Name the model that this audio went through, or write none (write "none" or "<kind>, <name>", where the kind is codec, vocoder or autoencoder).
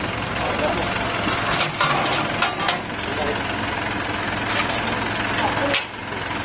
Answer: none